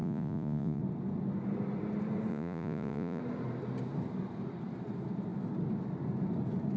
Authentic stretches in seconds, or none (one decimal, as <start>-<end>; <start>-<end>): 0.8-2.3; 3.2-6.8